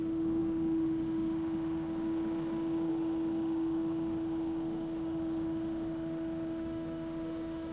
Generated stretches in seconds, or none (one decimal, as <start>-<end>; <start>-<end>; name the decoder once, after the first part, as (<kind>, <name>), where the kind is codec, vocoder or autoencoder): 0.0-7.7 (autoencoder, DAC-VAE)